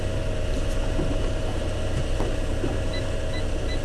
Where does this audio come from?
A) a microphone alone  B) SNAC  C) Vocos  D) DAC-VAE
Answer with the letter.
A